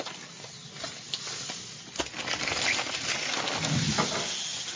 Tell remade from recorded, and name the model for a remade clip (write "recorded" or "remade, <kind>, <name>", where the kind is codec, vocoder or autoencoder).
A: recorded